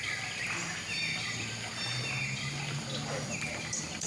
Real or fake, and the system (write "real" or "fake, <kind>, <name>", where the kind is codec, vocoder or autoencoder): real